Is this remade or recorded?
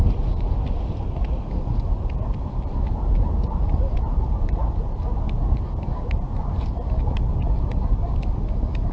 recorded